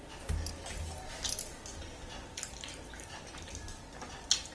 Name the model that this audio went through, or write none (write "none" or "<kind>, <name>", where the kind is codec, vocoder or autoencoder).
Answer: none